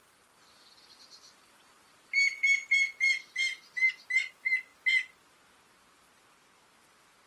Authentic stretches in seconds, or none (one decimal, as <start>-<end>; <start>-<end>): 0.0-3.5; 4.0-7.3